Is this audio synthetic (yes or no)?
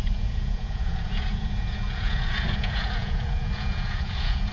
yes